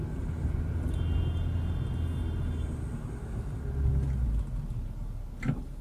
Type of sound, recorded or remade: recorded